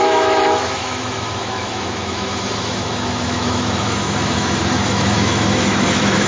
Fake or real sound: fake